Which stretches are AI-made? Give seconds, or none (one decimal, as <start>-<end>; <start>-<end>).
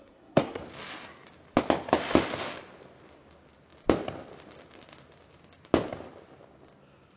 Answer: 0.0-0.6